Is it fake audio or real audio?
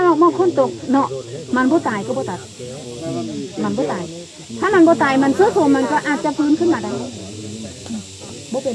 real